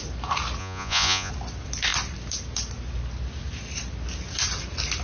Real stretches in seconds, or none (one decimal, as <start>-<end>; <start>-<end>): 0.0-0.6; 1.3-5.0